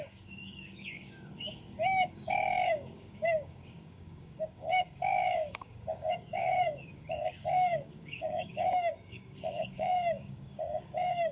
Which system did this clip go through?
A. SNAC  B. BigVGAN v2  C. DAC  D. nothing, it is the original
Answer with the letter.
C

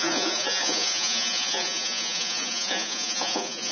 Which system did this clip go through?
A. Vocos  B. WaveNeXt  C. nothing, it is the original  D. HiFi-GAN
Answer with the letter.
A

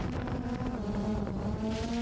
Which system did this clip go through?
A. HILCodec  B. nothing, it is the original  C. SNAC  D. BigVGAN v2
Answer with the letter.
D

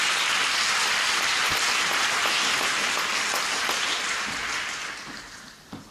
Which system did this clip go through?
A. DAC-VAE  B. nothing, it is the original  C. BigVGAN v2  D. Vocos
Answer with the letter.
B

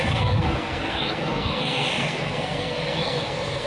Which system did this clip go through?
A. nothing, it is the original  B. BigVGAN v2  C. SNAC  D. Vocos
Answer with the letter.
C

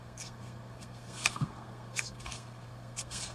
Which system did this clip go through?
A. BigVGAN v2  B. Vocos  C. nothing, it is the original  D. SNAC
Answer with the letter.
D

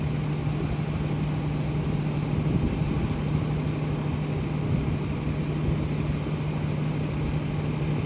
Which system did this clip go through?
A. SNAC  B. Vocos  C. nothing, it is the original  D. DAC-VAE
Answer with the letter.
C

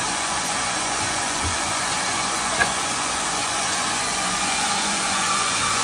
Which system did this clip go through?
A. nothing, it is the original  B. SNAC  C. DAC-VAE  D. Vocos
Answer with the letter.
D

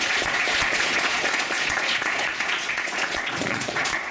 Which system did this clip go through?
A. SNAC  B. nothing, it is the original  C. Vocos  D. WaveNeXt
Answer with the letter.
C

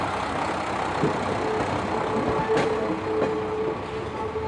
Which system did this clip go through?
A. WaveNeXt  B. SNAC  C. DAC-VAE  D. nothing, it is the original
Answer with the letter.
D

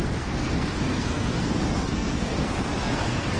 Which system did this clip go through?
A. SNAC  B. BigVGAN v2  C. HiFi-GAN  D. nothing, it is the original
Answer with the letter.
A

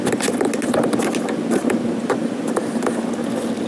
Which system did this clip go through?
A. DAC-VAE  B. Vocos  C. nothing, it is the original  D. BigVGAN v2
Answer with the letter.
C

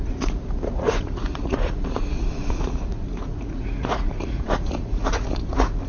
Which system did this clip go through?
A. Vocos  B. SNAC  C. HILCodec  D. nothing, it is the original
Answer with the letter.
A